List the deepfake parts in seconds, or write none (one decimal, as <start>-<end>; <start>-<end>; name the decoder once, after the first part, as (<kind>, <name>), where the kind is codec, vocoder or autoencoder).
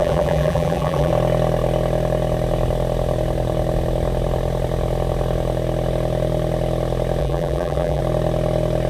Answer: 0.0-1.1 (vocoder, BigVGAN v2); 7.2-8.0